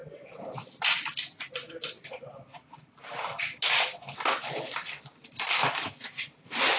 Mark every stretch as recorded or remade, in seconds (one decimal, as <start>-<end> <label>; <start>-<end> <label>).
0.0-5.2 recorded; 5.2-6.0 remade; 6.0-6.8 recorded